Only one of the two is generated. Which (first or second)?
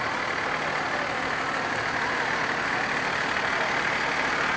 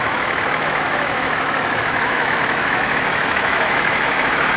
second